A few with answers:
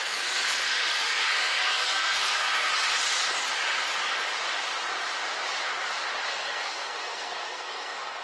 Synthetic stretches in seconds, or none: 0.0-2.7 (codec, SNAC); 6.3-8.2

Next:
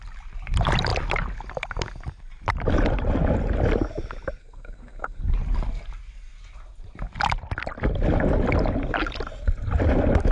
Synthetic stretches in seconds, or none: 4.4-5.2 (codec, SNAC)

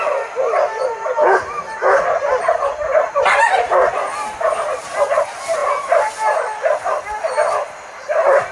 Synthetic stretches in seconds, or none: 2.9-4.1 (vocoder, BigVGAN v2); 5.6-6.8

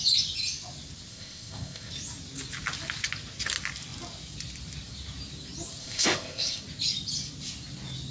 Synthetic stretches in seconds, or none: 1.1-1.9 (codec, ZipCodec); 5.8-6.6